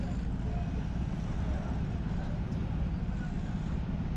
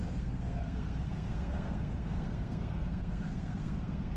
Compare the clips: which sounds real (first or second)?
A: first